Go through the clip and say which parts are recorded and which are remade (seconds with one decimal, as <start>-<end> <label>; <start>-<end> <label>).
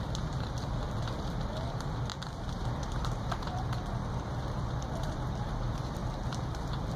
0.0-7.0 remade